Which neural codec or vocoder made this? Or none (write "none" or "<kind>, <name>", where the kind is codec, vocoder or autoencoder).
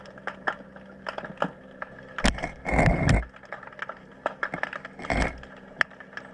none